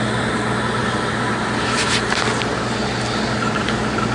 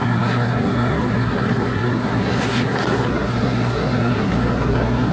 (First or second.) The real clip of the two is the first